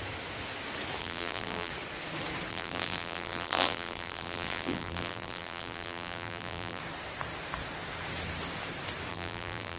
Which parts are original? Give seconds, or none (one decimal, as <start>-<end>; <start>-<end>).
0.0-1.0; 1.7-2.5; 6.8-9.1